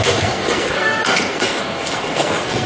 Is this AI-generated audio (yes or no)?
yes